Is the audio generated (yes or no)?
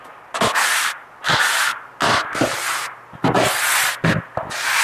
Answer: no